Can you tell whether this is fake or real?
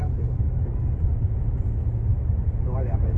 real